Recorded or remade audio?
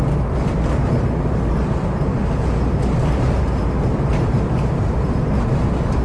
recorded